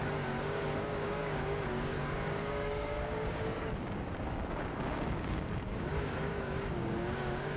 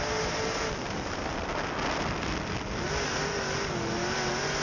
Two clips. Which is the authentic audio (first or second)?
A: second